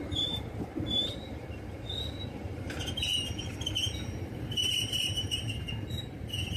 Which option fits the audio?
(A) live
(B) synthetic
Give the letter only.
B